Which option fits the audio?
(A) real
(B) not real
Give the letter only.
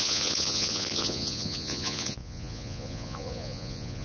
B